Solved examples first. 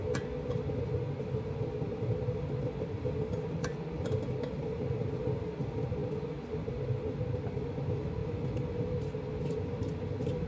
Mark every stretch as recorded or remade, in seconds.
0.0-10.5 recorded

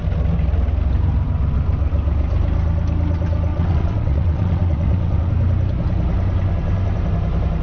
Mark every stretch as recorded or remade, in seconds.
0.0-3.5 recorded; 3.5-5.3 remade; 5.3-7.6 recorded

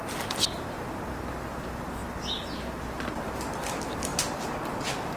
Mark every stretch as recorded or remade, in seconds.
0.0-5.2 recorded

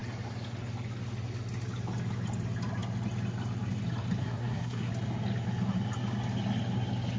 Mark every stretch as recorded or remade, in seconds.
0.0-4.2 recorded; 4.2-4.9 remade; 4.9-7.2 recorded

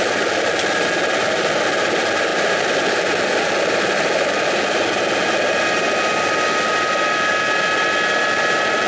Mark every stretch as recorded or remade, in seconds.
0.0-8.9 recorded

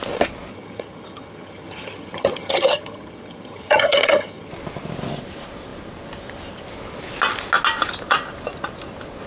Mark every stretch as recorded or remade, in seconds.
0.0-0.5 recorded; 0.5-4.5 remade; 4.5-9.3 recorded